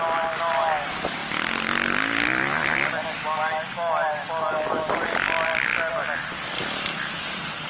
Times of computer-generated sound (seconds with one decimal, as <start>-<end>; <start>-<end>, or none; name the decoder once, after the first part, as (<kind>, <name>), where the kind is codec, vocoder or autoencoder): none